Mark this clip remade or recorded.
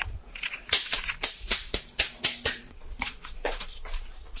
remade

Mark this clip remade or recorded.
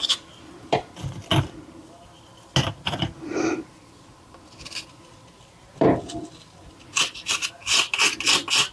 recorded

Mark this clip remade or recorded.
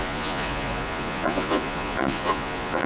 remade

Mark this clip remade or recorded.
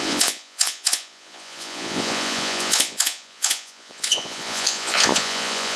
remade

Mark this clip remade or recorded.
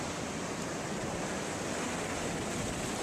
recorded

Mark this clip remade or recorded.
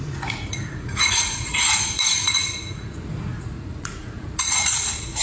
remade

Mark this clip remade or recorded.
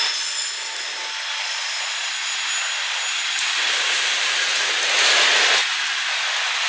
recorded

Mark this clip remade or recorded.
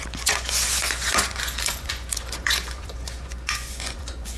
remade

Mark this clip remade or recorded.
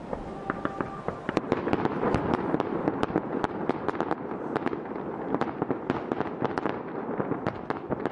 recorded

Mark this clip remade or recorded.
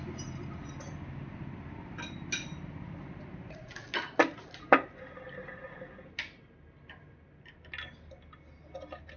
recorded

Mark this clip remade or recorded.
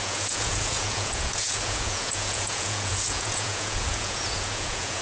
remade